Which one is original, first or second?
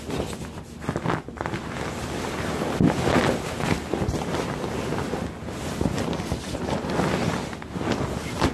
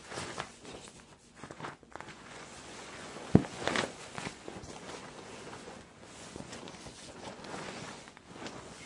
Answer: first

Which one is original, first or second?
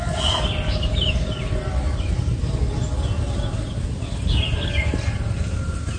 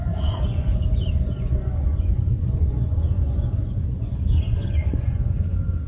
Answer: first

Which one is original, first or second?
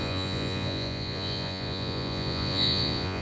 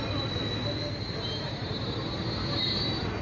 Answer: second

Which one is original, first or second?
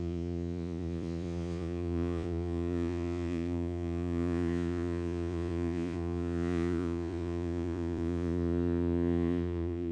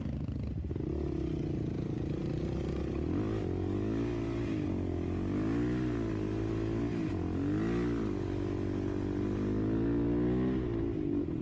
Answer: second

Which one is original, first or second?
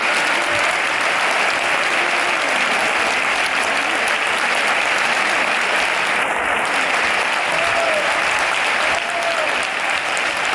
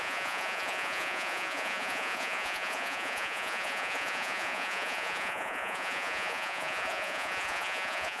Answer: first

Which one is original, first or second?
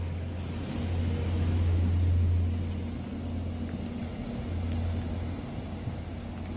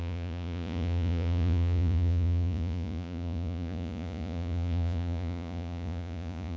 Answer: first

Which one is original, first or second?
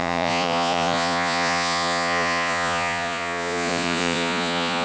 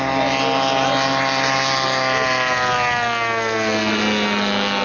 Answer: second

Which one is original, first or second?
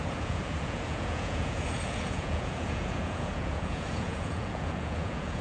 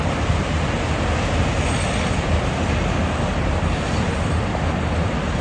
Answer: second